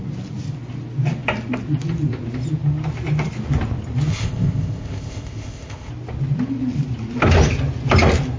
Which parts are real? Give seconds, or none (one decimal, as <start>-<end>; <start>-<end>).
0.0-4.1; 5.9-8.4